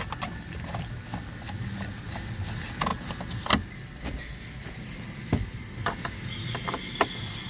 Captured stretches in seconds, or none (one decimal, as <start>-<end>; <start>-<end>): 0.0-7.5